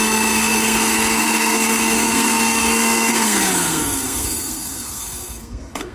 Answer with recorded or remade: remade